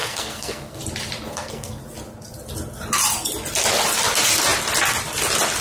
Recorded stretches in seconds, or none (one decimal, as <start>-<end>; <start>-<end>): 0.8-1.3; 1.8-5.6